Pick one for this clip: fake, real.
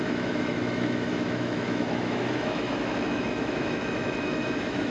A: fake